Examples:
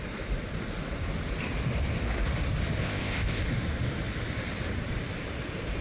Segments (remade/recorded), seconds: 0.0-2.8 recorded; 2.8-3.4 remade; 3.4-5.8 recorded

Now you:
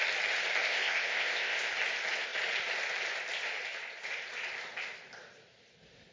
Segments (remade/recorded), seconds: 0.0-0.6 recorded; 0.6-1.7 remade; 1.7-6.1 recorded

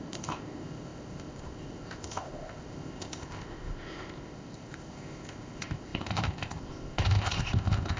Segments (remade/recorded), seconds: 0.0-8.0 remade

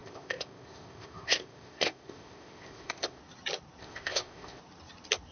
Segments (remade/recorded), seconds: 0.0-3.2 remade; 3.2-3.8 recorded; 3.8-4.6 remade; 4.6-5.3 recorded

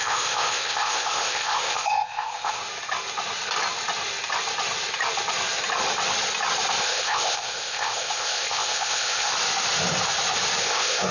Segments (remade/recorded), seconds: 0.0-2.6 remade; 2.6-6.8 recorded; 6.8-9.3 remade; 9.3-10.6 recorded; 10.6-11.1 remade

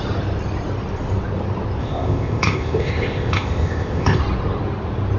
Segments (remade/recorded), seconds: 0.0-1.8 recorded; 1.8-4.2 remade; 4.2-5.2 recorded

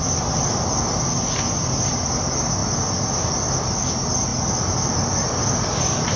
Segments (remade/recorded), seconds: 0.0-6.2 recorded

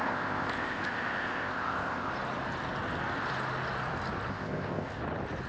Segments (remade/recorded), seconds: 0.0-2.1 remade; 2.1-4.3 recorded; 4.3-5.0 remade; 5.0-5.5 recorded